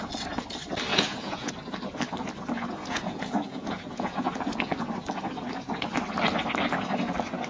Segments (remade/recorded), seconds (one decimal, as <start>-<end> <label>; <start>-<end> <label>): 0.0-0.9 recorded; 0.9-1.5 remade; 1.5-2.8 recorded; 2.8-4.7 remade; 4.7-7.5 recorded